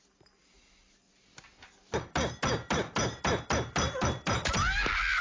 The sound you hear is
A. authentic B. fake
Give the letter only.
A